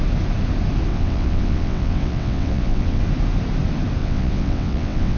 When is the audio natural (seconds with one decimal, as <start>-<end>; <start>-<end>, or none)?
0.0-0.9; 3.0-4.0